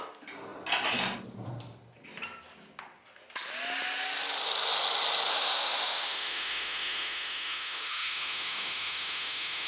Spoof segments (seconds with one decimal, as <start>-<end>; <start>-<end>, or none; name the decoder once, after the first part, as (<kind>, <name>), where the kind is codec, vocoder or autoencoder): 5.3-9.7 (autoencoder, DAC-VAE)